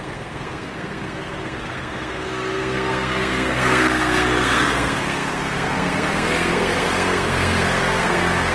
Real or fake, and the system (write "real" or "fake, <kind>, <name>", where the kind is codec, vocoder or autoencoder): fake, codec, SNAC